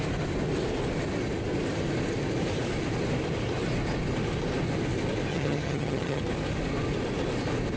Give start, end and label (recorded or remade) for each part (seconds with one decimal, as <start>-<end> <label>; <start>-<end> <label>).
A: 0.0-5.3 recorded; 5.3-6.2 remade; 6.2-7.8 recorded